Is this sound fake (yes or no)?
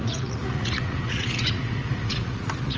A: yes